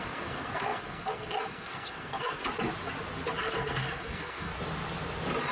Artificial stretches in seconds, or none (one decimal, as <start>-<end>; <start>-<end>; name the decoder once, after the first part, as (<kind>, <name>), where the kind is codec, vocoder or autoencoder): 0.0-2.4 (codec, SNAC); 3.4-4.5